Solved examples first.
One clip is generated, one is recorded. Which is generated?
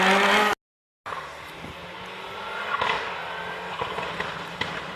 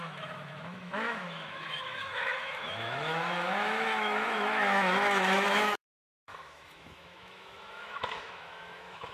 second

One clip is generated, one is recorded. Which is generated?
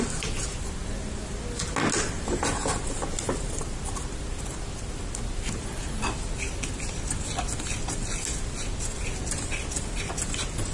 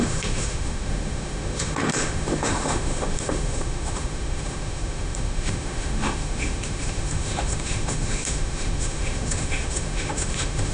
second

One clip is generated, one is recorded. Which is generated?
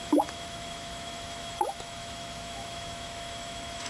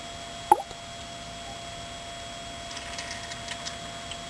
first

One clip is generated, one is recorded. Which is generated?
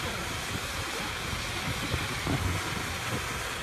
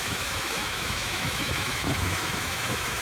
second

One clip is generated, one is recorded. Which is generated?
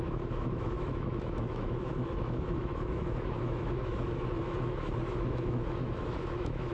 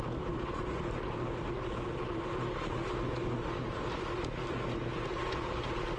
first